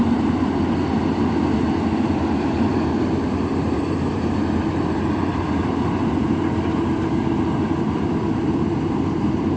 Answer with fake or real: fake